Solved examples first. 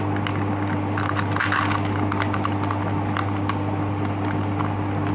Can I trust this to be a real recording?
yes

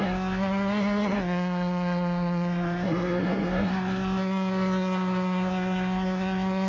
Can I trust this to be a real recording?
no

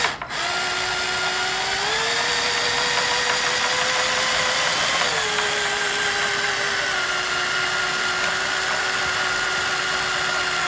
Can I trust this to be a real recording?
yes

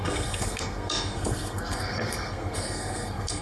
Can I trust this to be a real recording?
no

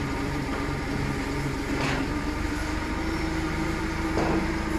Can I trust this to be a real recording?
yes